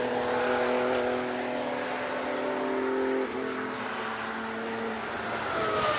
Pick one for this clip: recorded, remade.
recorded